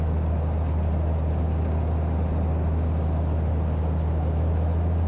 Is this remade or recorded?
recorded